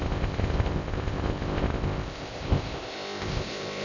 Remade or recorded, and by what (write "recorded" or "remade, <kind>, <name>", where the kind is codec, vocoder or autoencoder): remade, codec, ZipCodec